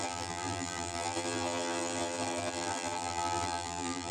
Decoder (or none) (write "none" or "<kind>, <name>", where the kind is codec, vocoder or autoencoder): vocoder, BigVGAN v2